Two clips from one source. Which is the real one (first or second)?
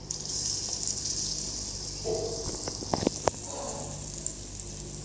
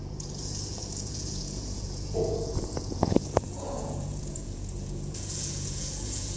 first